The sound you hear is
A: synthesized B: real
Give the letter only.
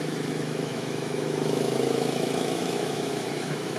A